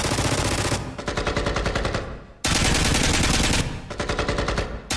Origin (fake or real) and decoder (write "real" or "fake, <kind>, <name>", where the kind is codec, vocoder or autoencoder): real